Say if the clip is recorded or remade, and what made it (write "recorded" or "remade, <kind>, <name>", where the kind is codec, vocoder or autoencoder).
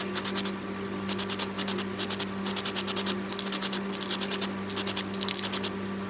recorded